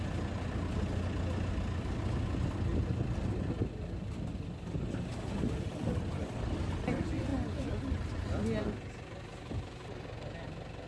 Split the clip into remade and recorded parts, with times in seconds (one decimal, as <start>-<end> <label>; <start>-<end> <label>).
0.0-10.9 recorded